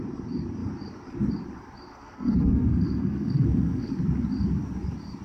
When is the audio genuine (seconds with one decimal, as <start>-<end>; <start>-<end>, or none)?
0.0-1.9; 3.9-5.2